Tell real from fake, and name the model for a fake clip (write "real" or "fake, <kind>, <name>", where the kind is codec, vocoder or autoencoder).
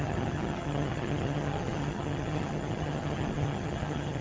fake, vocoder, HiFi-GAN